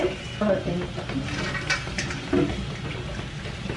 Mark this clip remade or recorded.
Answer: recorded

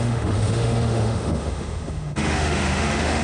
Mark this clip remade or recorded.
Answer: remade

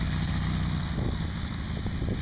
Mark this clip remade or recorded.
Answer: recorded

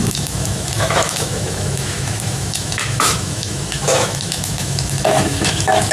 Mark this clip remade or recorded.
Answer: remade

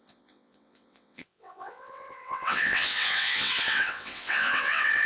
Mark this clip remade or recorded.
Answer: remade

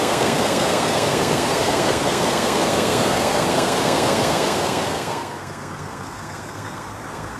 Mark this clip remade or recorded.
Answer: remade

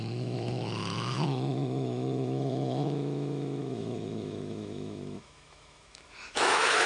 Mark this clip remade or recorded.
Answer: remade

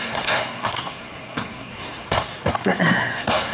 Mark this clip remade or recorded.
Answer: remade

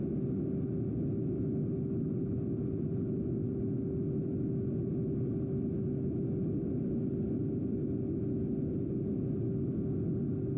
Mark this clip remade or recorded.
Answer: recorded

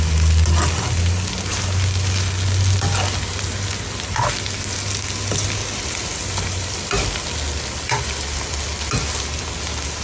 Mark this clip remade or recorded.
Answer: recorded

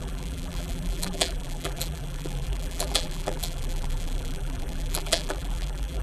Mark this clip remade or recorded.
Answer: remade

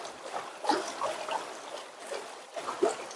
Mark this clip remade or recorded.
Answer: recorded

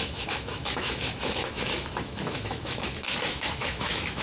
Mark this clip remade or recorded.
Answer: remade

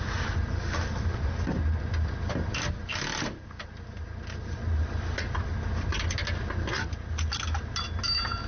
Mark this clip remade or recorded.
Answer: recorded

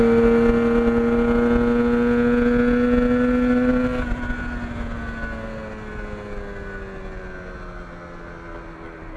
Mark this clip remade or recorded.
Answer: recorded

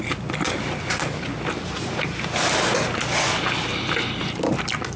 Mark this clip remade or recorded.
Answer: recorded